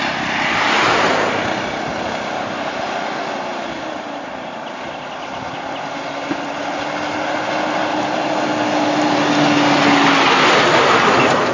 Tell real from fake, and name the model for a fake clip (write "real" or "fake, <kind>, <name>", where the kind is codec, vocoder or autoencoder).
real